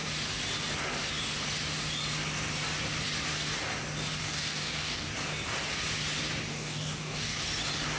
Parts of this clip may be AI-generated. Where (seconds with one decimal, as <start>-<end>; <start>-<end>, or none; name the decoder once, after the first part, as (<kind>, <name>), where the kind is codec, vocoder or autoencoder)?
4.2-5.1 (codec, DAC); 6.5-7.4